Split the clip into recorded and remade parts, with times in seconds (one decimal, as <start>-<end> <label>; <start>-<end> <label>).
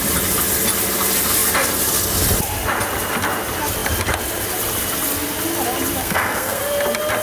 0.0-6.0 recorded; 6.0-6.6 remade; 6.6-7.2 recorded